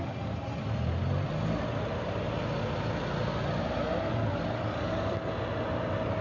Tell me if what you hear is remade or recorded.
recorded